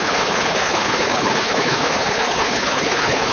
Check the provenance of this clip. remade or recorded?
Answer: remade